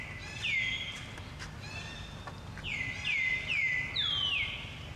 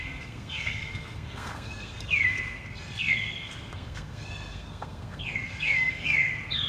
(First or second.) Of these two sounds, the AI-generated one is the second